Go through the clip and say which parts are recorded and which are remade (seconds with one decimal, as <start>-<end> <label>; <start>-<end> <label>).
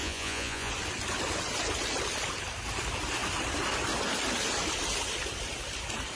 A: 0.0-0.7 remade; 0.7-6.2 recorded